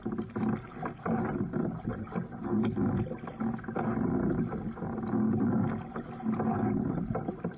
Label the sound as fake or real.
real